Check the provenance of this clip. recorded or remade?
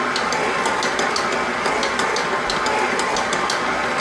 recorded